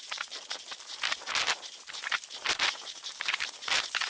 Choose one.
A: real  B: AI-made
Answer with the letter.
B